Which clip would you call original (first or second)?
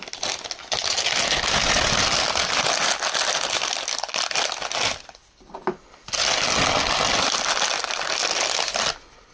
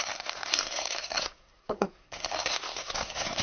first